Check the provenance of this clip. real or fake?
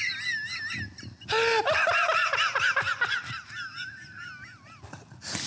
real